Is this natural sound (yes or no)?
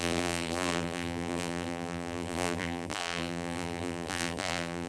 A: no